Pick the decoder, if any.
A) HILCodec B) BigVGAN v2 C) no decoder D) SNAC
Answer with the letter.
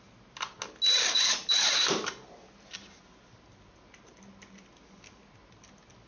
C